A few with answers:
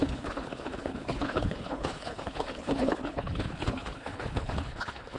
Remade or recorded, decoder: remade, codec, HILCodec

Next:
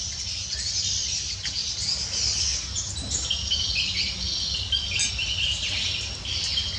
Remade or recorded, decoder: recorded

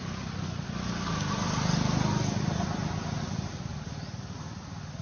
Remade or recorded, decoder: recorded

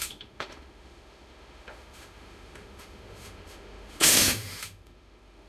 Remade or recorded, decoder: remade, autoencoder, DAC-VAE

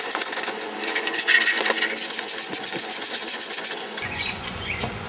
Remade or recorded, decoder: remade, vocoder, Vocos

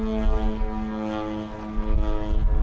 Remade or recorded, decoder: recorded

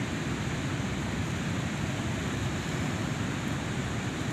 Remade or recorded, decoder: recorded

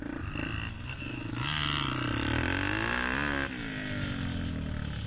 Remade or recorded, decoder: recorded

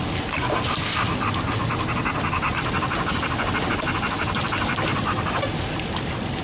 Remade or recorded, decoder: recorded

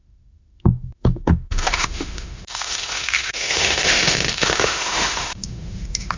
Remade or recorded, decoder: remade, autoencoder, DAC-VAE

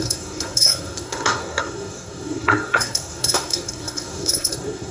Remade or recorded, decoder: remade, codec, SNAC